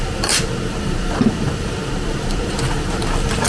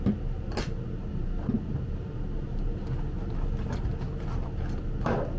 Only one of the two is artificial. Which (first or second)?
first